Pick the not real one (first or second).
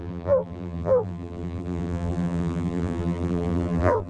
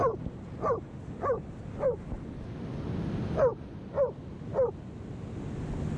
first